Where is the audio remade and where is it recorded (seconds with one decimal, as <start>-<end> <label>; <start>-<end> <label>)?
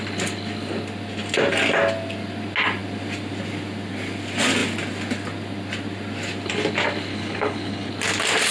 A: 0.0-7.1 recorded; 7.1-7.9 remade; 7.9-8.5 recorded